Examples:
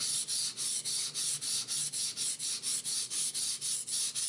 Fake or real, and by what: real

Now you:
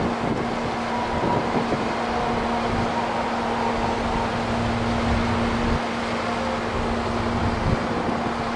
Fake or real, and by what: real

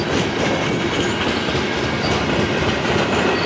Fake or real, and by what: real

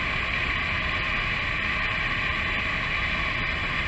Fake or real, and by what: real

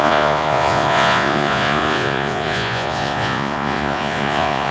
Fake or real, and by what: fake, vocoder, Vocos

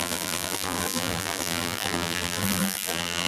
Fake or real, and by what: fake, vocoder, BigVGAN v2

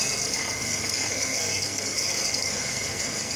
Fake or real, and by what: fake, codec, SNAC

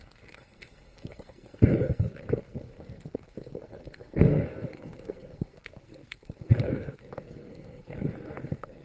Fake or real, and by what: fake, codec, SNAC